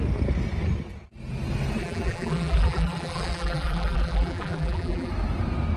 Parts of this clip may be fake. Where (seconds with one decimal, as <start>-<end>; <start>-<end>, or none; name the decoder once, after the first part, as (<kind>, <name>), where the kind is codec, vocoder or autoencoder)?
1.8-5.1 (vocoder, BigVGAN v2)